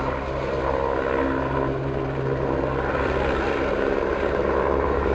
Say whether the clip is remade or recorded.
remade